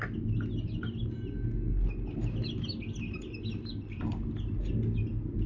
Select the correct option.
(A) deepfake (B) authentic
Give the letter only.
B